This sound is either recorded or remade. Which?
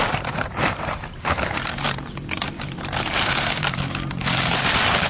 remade